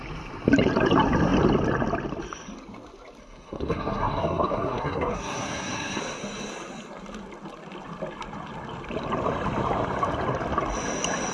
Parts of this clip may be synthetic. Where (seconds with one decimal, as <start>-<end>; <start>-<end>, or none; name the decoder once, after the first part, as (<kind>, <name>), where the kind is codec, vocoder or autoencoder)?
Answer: 3.2-6.0 (codec, SNAC)